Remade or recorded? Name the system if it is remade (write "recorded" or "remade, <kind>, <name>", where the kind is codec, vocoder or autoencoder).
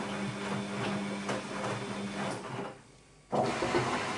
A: recorded